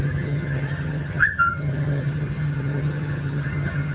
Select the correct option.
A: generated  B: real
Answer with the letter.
A